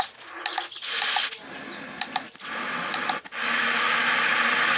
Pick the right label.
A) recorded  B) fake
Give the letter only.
A